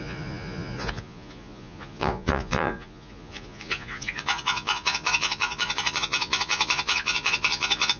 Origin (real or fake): fake